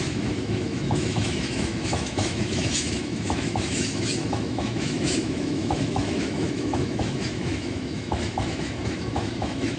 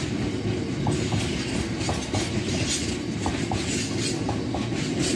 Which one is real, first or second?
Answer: second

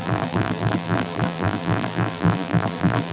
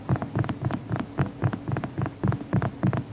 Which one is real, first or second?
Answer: second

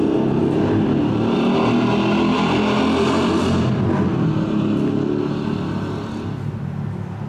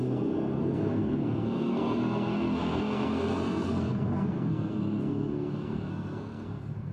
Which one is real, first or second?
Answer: first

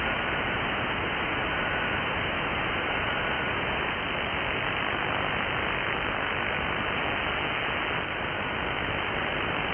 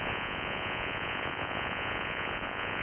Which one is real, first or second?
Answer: first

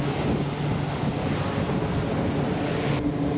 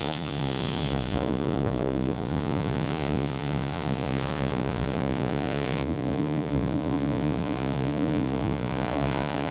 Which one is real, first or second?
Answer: first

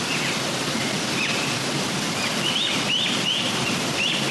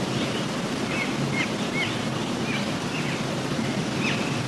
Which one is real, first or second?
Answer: second